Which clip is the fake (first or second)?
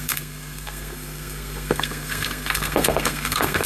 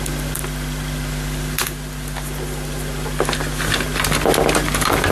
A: first